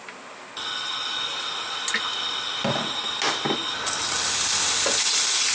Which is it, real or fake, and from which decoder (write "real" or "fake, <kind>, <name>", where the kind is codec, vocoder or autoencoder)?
real